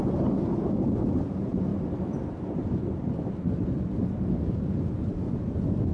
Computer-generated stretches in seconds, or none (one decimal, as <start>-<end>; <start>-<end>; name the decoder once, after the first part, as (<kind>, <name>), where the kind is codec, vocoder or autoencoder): none